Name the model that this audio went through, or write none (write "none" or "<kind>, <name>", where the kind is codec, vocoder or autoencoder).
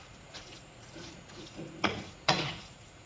vocoder, Vocos